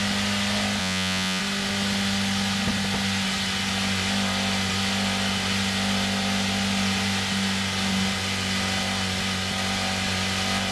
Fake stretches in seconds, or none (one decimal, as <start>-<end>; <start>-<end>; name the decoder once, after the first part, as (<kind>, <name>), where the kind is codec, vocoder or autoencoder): 0.8-1.4 (vocoder, Vocos)